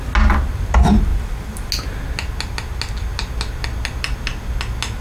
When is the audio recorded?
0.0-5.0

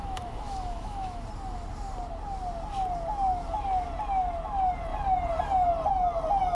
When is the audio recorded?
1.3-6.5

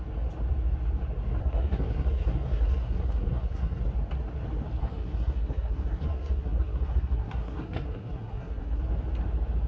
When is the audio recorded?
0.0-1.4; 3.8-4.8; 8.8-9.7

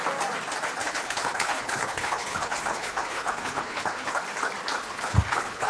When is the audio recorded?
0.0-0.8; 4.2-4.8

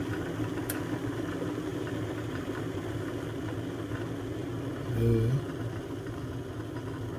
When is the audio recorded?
0.0-1.7; 3.1-7.2

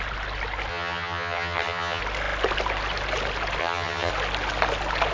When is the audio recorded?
0.0-0.7; 2.0-3.6; 4.1-5.1

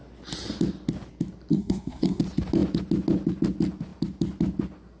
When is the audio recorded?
0.0-1.5; 2.2-5.0